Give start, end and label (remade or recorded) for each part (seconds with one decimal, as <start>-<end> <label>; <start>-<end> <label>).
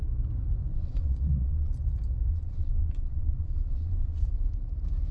0.0-0.7 recorded; 0.7-1.7 remade; 1.7-2.3 recorded; 2.3-4.3 remade; 4.3-5.1 recorded